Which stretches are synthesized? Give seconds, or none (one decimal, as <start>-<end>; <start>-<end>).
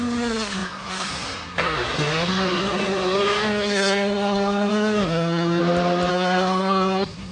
0.0-5.6; 6.1-7.3